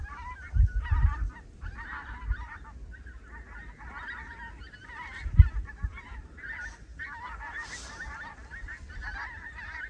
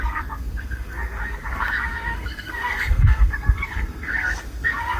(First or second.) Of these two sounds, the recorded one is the first